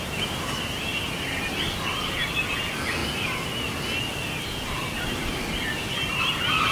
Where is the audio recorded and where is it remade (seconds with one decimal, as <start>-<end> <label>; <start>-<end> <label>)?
0.0-6.7 recorded